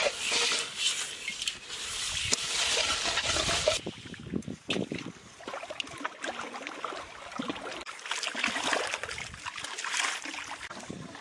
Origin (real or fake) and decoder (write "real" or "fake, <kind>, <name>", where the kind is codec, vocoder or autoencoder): real